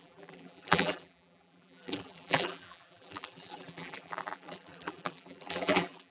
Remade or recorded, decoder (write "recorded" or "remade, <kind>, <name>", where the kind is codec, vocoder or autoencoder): remade, vocoder, BigVGAN v2